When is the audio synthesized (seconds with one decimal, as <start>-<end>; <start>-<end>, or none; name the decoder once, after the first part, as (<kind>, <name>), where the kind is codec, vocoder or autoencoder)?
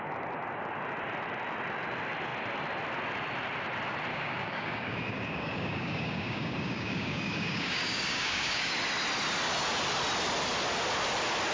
4.1-8.7 (codec, DAC)